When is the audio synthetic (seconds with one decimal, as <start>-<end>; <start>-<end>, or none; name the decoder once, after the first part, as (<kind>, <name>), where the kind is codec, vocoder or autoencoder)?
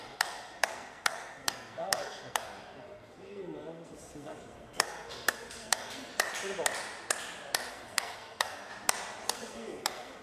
0.0-6.1 (codec, SNAC); 7.7-8.7; 9.3-10.2